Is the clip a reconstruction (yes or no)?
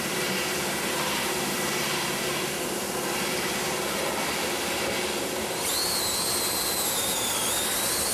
no